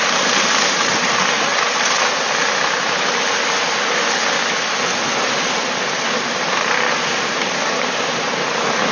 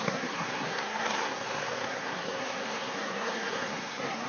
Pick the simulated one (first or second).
second